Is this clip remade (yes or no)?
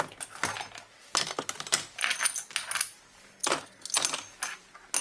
no